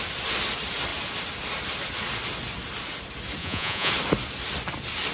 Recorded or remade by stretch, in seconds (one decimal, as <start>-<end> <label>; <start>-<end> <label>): 0.0-3.4 recorded; 3.4-3.9 remade; 3.9-5.1 recorded